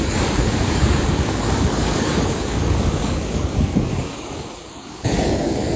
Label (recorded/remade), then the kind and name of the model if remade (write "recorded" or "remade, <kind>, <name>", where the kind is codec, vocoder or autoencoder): remade, codec, DAC